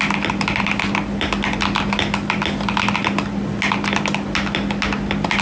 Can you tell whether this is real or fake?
real